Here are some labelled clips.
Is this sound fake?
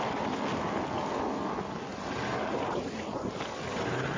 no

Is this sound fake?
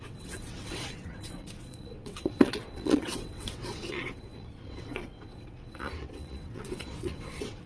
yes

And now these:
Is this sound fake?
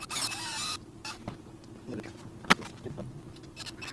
no